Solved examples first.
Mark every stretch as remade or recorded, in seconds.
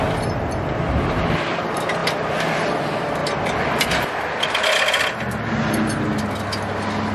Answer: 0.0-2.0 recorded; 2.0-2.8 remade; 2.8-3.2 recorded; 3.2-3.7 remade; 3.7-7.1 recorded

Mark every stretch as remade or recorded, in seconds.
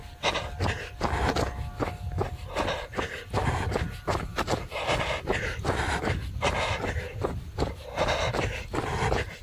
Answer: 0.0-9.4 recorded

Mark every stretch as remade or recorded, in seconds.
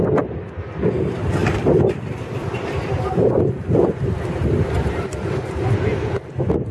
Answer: 0.0-1.4 recorded; 1.4-5.4 remade; 5.4-6.7 recorded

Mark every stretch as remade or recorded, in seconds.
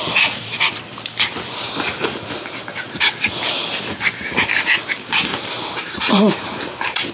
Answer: 0.0-5.3 recorded; 5.3-7.1 remade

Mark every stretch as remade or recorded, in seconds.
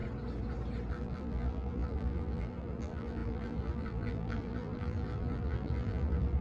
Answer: 0.0-0.9 recorded; 0.9-6.4 remade